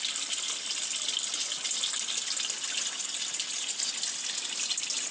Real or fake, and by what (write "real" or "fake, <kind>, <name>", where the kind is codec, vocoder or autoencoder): real